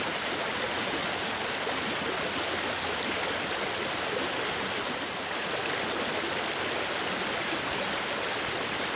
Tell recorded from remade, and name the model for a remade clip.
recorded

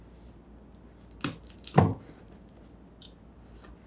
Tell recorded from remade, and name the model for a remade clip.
recorded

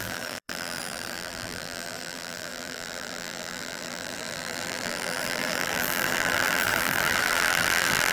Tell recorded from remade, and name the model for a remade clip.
remade, vocoder, BigVGAN v2